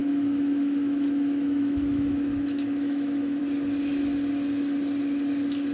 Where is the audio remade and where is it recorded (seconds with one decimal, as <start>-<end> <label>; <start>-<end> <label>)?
0.0-3.4 remade; 3.4-5.7 recorded